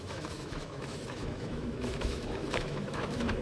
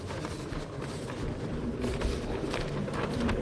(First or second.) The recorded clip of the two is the second